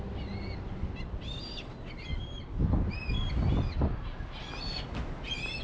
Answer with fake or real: real